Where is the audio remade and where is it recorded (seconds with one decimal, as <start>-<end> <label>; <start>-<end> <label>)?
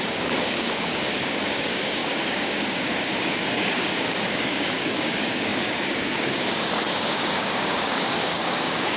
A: 0.0-9.0 remade